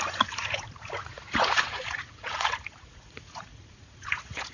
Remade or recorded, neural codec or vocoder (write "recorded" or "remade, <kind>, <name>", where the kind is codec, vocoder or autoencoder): remade, vocoder, Vocos